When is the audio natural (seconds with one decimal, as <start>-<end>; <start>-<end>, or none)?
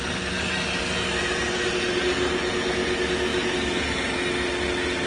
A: 0.0-5.1